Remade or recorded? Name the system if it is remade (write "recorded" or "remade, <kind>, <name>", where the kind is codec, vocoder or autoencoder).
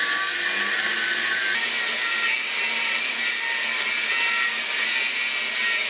recorded